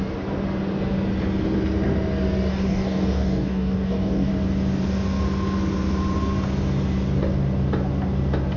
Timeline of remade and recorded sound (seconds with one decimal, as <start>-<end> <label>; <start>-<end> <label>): 0.0-2.5 recorded; 2.5-4.3 remade; 4.3-8.6 recorded